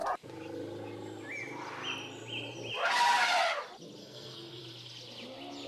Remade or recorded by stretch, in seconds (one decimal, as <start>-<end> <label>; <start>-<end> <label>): 0.0-4.0 recorded; 4.0-4.6 remade; 4.6-5.7 recorded